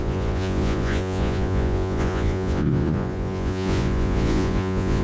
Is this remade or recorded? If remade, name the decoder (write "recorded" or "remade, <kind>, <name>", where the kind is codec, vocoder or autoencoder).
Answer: remade, vocoder, Vocos